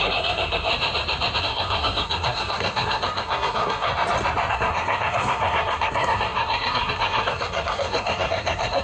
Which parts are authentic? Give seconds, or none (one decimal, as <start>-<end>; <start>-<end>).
0.7-1.4; 3.9-4.5